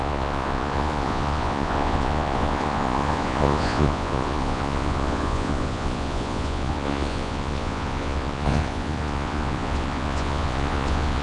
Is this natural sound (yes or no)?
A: no